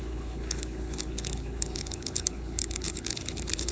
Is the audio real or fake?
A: fake